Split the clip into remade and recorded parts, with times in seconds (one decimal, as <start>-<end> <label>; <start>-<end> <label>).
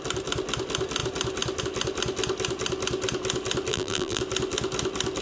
0.0-3.7 recorded; 3.7-4.2 remade; 4.2-5.2 recorded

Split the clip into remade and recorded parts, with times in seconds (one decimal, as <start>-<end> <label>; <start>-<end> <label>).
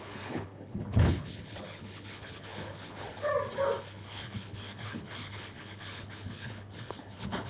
0.0-3.3 remade; 3.3-3.8 recorded; 3.8-7.5 remade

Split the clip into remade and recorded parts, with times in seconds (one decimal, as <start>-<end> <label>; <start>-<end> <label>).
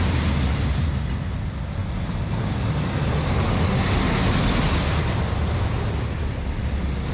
0.0-7.1 recorded